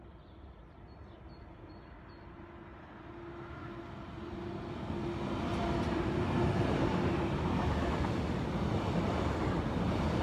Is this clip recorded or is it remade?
recorded